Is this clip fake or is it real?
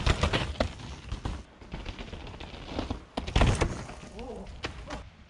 real